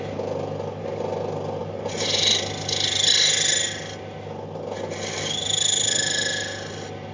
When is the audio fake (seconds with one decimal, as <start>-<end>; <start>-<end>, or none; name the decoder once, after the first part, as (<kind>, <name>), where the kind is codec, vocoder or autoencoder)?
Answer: none